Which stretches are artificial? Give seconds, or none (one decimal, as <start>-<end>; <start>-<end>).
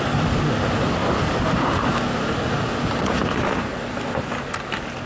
1.0-2.1; 3.2-3.7